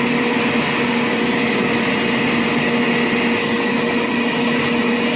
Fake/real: real